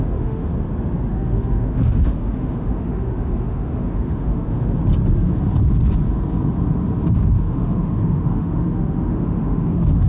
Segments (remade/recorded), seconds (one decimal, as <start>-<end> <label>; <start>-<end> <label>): 0.0-0.5 remade; 0.5-1.1 recorded; 1.1-4.8 remade; 4.8-7.1 recorded; 7.1-10.1 remade